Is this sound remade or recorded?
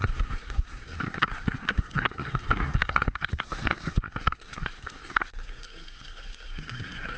remade